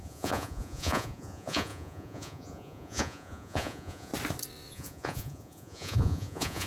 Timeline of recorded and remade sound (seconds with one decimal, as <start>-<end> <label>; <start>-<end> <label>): 0.0-4.1 remade; 4.1-4.7 recorded; 4.7-6.7 remade